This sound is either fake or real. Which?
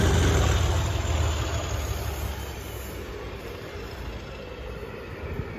real